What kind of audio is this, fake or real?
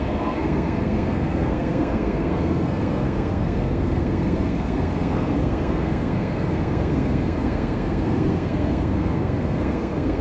fake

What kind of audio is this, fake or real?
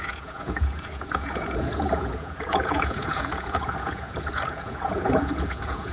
fake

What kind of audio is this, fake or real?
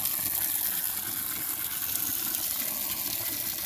real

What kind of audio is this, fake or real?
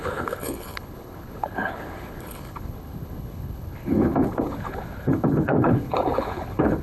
fake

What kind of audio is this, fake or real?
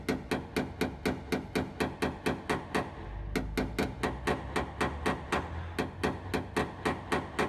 real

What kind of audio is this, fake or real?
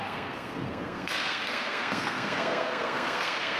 fake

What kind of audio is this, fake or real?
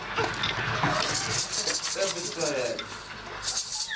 real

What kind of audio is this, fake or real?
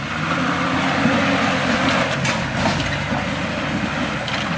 real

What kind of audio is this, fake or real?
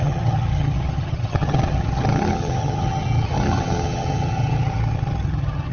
fake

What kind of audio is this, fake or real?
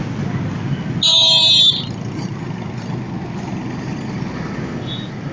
real